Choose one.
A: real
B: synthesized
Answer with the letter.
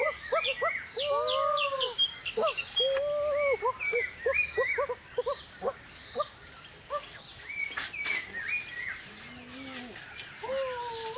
A